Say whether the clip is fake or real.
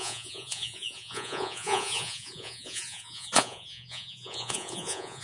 fake